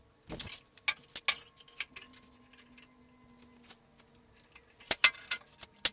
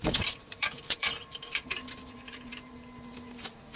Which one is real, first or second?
first